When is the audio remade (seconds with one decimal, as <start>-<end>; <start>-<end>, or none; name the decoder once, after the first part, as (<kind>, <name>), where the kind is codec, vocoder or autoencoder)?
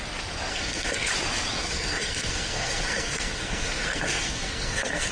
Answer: 0.5-1.1 (codec, SNAC); 1.6-5.1